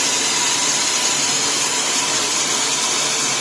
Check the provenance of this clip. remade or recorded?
recorded